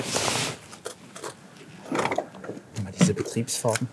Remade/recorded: recorded